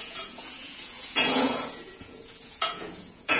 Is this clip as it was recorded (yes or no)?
no